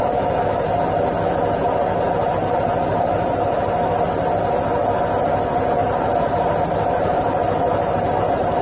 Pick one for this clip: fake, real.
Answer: real